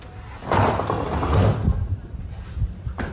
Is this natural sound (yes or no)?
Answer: yes